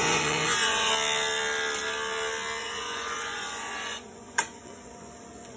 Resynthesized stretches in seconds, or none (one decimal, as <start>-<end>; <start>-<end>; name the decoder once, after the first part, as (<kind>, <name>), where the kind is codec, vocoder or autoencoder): 0.0-0.9 (vocoder, Vocos); 2.6-5.6